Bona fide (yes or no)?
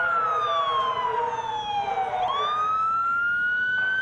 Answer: yes